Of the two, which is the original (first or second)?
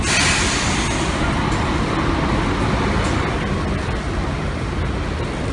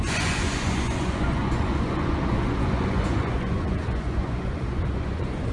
first